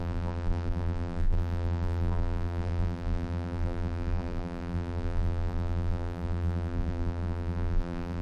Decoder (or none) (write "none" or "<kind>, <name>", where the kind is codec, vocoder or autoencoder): vocoder, BigVGAN v2